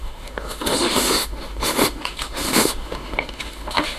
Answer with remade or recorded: remade